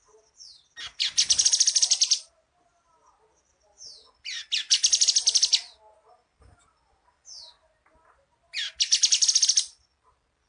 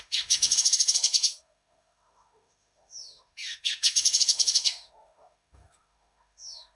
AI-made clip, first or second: second